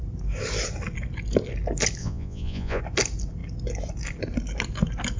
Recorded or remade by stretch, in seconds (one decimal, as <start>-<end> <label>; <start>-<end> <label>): 0.0-2.0 recorded; 2.0-2.8 remade; 2.8-5.2 recorded